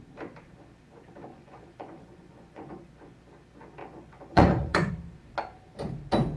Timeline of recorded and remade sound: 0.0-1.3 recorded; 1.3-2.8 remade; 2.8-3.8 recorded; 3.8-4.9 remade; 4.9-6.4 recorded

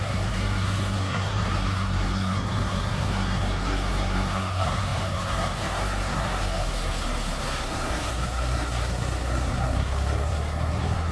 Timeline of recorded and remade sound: 0.0-11.1 remade

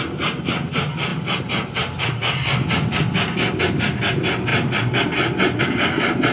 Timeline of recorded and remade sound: 0.0-6.3 recorded

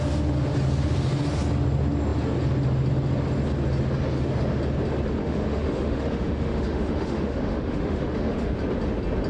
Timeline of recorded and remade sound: 0.0-5.2 recorded; 5.2-8.5 remade; 8.5-9.3 recorded

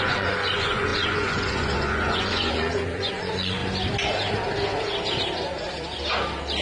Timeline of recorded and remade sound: 0.0-3.6 remade; 3.6-6.6 recorded

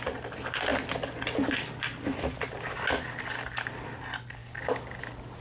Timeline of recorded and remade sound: 0.0-5.4 recorded

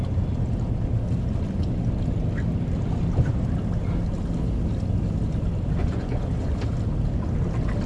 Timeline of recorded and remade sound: 0.0-5.8 recorded; 5.8-6.6 remade; 6.6-7.9 recorded